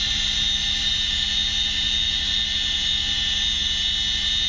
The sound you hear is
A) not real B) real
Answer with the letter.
B